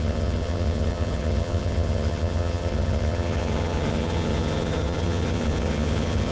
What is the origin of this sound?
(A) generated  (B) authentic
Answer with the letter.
A